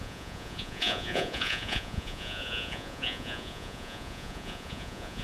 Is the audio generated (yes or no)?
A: yes